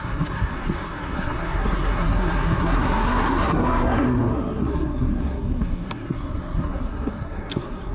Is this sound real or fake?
fake